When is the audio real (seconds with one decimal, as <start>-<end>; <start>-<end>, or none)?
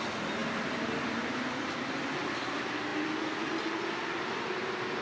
0.0-5.0